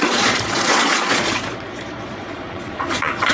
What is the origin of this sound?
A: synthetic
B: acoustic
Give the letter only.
A